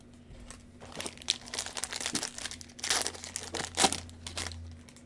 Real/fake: real